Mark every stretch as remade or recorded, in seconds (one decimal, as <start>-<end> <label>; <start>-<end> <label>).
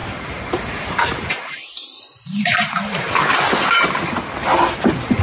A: 0.0-3.1 remade; 3.1-5.2 recorded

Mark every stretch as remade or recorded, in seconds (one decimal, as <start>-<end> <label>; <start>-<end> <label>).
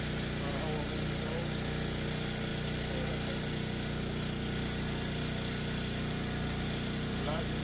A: 0.0-7.6 recorded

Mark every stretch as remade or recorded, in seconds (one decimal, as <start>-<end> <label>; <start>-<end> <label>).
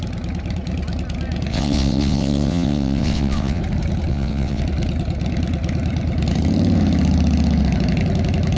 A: 0.0-1.5 recorded; 1.5-3.6 remade; 3.6-4.1 recorded; 4.1-4.6 remade; 4.6-8.6 recorded